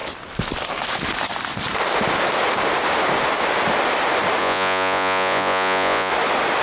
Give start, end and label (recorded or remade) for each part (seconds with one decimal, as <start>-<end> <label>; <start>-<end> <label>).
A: 0.0-4.4 recorded; 4.4-6.1 remade; 6.1-6.6 recorded